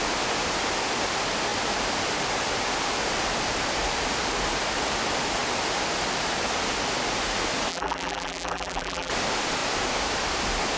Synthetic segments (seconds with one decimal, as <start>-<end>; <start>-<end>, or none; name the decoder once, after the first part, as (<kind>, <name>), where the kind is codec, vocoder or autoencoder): 7.7-9.1 (vocoder, BigVGAN v2)